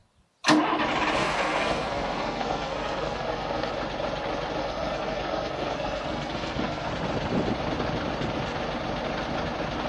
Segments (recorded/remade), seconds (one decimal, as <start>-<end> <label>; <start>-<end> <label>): 0.0-1.2 recorded; 1.2-3.7 remade; 3.7-4.6 recorded; 4.6-6.9 remade; 6.9-9.9 recorded